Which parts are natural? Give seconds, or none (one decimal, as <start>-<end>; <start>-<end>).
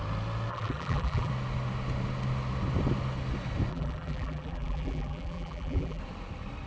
0.0-0.5; 1.3-3.7; 6.0-6.7